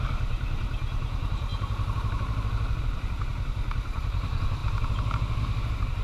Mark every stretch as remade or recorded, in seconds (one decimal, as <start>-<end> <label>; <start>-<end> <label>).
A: 0.0-1.5 remade; 1.5-2.8 recorded; 2.8-3.3 remade; 3.3-4.0 recorded; 4.0-4.6 remade; 4.6-5.4 recorded; 5.4-6.0 remade